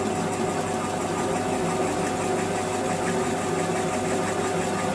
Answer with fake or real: real